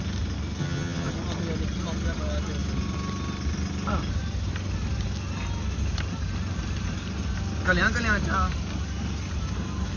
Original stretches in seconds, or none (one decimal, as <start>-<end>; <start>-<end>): 0.0-0.6; 1.1-10.0